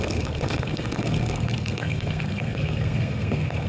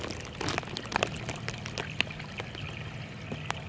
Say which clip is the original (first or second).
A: second